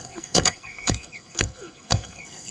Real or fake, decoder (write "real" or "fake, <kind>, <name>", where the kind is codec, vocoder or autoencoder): fake, codec, SNAC